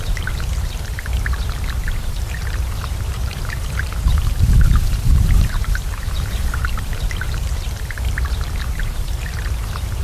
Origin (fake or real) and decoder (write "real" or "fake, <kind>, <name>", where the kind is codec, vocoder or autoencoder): fake, vocoder, BigVGAN v2